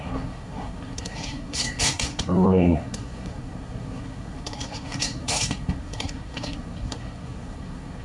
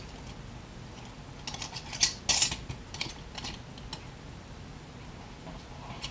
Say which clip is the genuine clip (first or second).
second